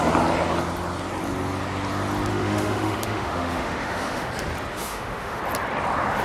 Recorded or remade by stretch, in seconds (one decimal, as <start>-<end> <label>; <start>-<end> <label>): 0.0-2.3 recorded; 2.3-4.3 remade; 4.3-4.7 recorded; 4.7-5.4 remade; 5.4-6.2 recorded